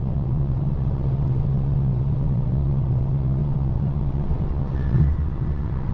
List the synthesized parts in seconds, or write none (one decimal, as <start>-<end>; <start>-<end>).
0.0-5.9